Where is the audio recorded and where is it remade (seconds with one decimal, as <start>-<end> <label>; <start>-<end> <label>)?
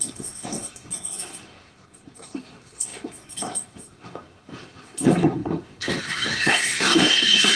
0.0-7.6 remade